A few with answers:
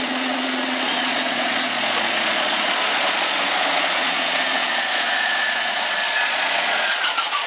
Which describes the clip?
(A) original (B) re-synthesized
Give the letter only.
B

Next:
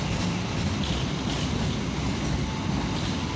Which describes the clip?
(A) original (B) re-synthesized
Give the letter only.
A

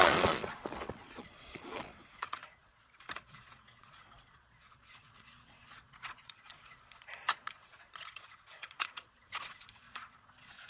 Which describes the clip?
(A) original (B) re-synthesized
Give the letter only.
B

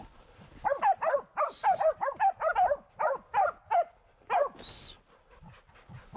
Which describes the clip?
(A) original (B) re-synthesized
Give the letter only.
A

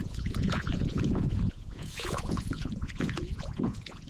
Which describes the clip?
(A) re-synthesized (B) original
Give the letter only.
A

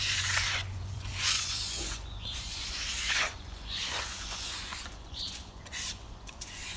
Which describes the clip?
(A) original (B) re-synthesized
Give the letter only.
B